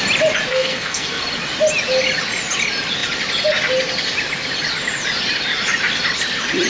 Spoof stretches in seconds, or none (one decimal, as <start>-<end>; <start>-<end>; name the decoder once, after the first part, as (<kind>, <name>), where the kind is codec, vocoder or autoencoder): 0.5-1.2 (codec, SNAC)